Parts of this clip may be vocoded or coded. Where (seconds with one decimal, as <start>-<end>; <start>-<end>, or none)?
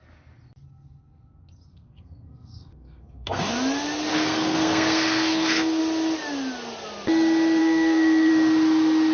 1.7-3.5; 4.1-5.8; 7.6-8.3